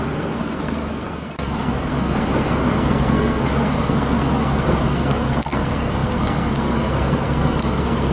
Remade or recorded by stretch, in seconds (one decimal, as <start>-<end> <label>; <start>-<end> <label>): 0.0-8.1 remade